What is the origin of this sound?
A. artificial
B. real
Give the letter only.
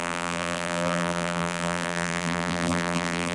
A